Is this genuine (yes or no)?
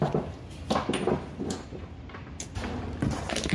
yes